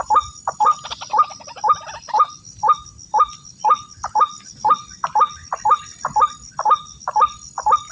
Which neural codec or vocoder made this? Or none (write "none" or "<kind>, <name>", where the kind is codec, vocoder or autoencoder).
none